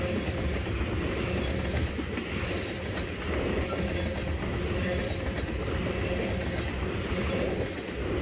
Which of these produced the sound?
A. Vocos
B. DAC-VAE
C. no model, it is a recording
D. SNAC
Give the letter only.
C